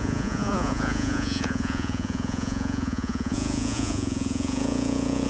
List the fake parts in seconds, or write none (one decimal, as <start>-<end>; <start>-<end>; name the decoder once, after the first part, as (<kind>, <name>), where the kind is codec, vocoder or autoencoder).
0.0-5.3 (vocoder, Vocos)